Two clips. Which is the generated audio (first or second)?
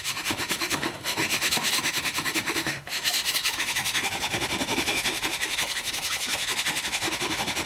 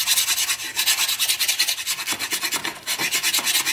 first